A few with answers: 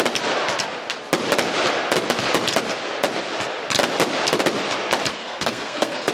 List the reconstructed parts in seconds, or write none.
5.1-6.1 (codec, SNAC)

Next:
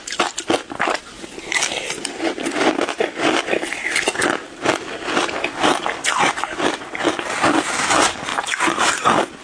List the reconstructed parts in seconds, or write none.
none

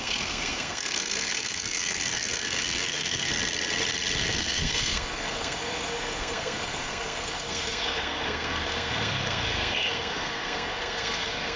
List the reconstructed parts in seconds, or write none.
0.0-3.3 (codec, SNAC); 4.2-11.6

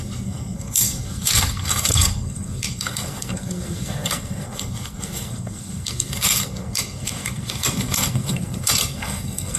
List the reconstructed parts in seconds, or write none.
0.0-9.6 (codec, SNAC)

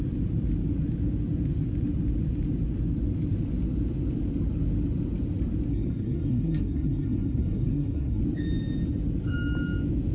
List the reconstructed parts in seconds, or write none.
5.7-8.2 (codec, SNAC)